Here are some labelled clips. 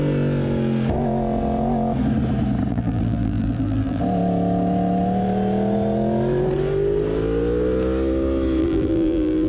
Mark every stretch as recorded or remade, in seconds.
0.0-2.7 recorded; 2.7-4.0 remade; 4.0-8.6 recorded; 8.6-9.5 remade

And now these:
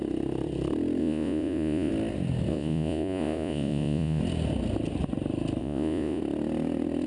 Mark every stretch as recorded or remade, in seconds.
0.0-1.0 recorded; 1.0-1.9 remade; 1.9-2.5 recorded; 2.5-4.2 remade; 4.2-5.6 recorded; 5.6-6.2 remade; 6.2-7.1 recorded